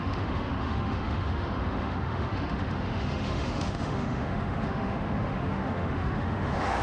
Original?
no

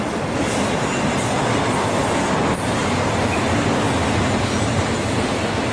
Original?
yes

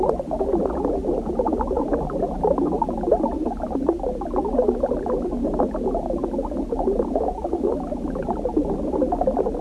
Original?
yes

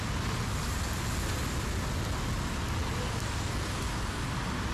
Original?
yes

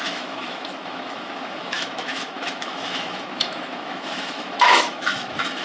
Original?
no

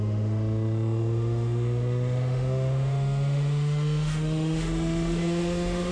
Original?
no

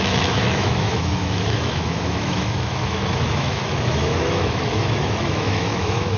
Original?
no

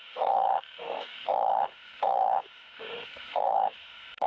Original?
no